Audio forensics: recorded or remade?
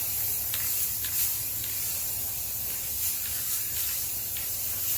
remade